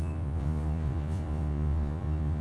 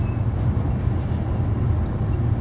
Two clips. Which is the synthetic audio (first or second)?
first